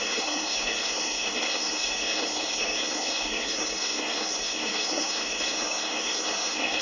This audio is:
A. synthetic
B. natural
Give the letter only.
A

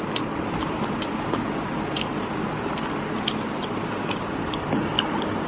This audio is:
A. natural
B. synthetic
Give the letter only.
A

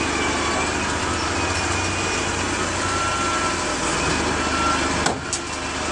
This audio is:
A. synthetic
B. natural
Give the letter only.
B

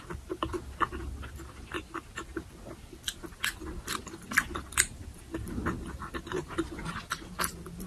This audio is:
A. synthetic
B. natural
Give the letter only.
B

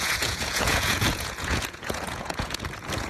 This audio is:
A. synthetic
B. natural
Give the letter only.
A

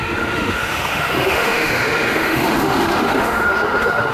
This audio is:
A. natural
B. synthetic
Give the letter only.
B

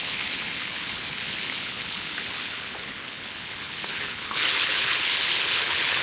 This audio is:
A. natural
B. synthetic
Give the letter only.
B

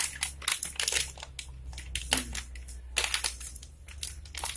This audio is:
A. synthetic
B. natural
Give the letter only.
B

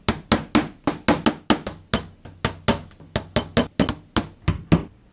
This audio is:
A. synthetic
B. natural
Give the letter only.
B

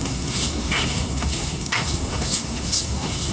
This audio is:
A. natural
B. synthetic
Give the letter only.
B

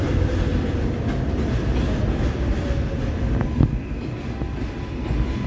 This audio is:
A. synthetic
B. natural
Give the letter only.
B